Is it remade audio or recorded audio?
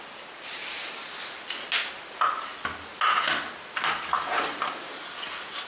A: recorded